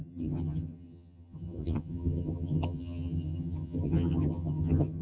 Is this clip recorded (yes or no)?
no